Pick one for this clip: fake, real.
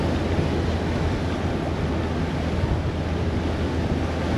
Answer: real